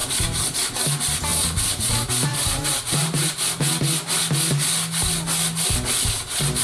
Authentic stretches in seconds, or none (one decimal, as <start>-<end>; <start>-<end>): 0.8-1.3; 1.9-2.3; 3.4-6.6